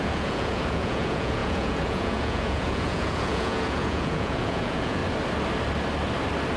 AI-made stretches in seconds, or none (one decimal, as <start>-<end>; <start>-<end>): 0.0-5.0